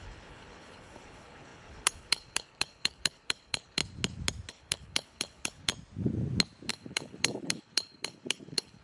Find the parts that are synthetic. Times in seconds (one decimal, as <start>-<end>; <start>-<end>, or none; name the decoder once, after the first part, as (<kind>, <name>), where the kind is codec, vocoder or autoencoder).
0.0-3.8 (codec, HILCodec); 4.5-5.7; 6.7-8.8